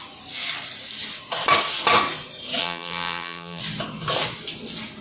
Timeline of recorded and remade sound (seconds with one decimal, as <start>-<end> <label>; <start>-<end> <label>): 0.0-2.6 recorded; 2.6-3.6 remade; 3.6-5.0 recorded